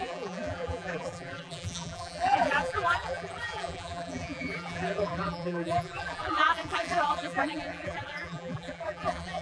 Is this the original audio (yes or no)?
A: no